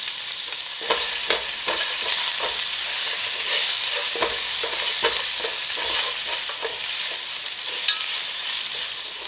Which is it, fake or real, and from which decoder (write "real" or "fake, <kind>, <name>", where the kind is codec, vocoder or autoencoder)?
fake, vocoder, BigVGAN v2